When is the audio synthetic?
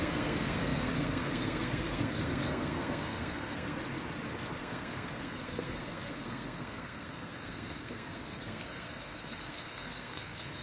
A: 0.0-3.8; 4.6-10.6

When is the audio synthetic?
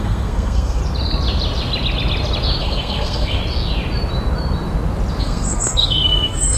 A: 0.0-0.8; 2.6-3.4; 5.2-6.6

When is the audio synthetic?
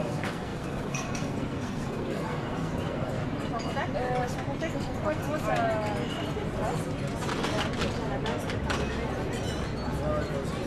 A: 0.0-3.2; 4.7-5.2